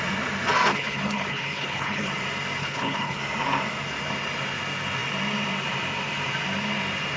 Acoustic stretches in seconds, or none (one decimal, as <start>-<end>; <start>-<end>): 0.0-0.7; 2.1-2.6; 3.2-7.2